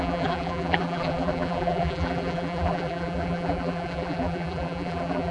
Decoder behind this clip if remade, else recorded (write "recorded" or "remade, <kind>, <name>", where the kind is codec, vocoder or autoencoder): remade, vocoder, BigVGAN v2